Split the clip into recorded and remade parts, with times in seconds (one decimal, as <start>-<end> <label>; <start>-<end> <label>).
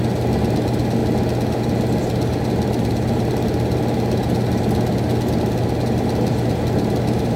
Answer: 0.0-7.4 recorded